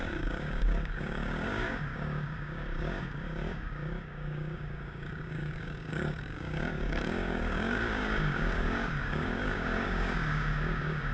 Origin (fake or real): fake